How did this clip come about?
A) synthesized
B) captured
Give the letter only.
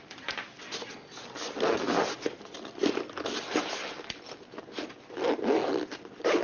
B